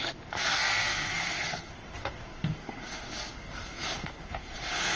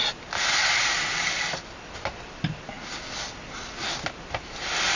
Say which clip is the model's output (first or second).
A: first